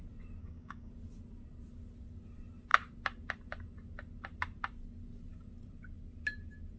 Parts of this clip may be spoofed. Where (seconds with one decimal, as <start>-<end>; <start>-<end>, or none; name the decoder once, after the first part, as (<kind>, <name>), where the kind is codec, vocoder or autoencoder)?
0.4-0.9 (codec, DAC)